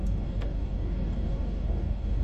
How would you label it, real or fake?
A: fake